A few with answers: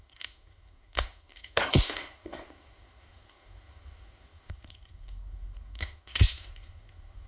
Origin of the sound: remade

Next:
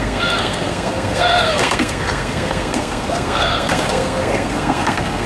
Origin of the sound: remade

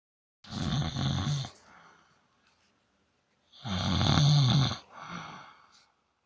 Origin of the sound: recorded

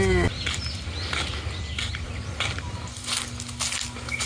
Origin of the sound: recorded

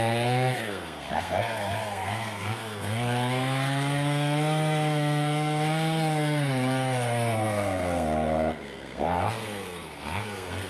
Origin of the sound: remade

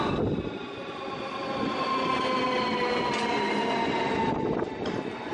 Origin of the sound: recorded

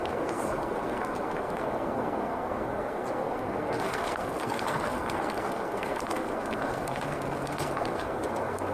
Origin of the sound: remade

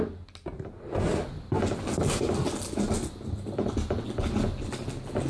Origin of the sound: recorded